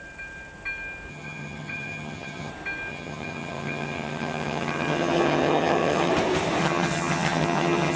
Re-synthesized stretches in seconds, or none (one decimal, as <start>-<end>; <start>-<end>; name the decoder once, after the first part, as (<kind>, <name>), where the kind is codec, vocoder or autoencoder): 1.1-2.5 (vocoder, HiFi-GAN); 2.9-6.1; 6.6-8.0